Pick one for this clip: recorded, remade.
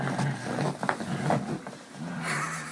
recorded